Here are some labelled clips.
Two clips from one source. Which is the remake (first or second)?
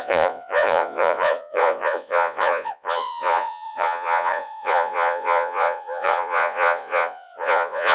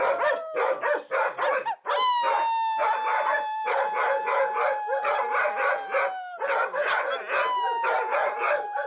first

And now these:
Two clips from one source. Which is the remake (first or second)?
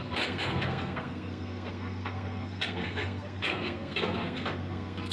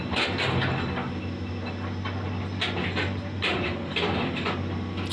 first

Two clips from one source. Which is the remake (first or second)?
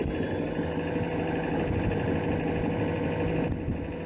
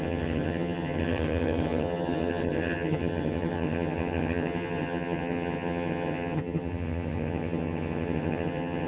second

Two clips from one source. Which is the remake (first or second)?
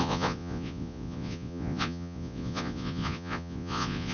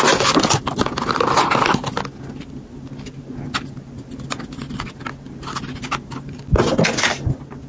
first